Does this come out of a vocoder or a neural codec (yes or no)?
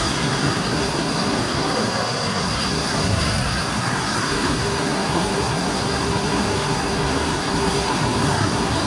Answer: yes